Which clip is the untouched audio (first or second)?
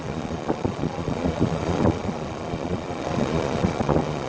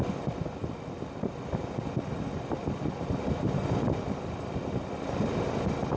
second